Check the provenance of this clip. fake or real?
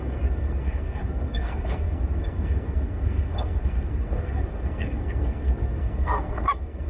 fake